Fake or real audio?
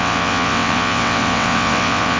fake